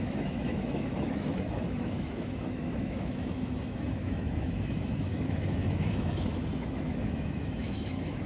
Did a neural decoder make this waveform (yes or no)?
yes